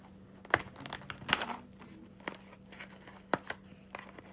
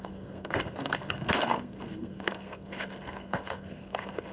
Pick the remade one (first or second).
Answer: second